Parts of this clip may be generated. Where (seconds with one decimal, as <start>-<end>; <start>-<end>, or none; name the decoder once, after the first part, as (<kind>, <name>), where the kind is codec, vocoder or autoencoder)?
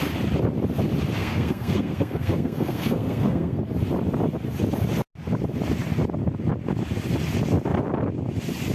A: 1.2-3.6 (codec, SNAC)